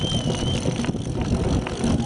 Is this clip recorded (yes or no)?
yes